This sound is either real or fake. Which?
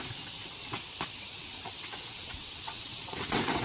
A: fake